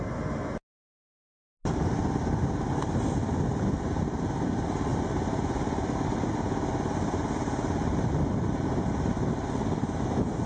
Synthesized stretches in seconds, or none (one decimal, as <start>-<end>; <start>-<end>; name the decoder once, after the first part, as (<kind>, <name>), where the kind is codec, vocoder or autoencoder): 4.9-9.3 (vocoder, BigVGAN v2)